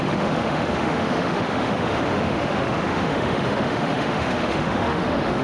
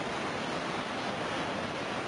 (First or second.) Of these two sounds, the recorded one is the second